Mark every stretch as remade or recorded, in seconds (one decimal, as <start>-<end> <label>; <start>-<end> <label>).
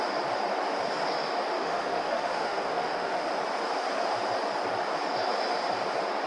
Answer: 0.0-1.6 recorded; 1.6-3.3 remade; 3.3-6.3 recorded